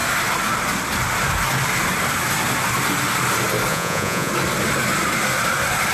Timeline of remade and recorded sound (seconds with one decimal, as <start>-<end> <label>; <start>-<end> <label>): 0.0-3.7 recorded; 3.7-4.3 remade; 4.3-5.9 recorded